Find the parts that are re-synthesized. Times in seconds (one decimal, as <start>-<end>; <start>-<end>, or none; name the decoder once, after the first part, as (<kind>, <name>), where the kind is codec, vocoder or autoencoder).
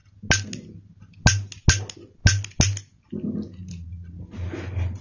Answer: none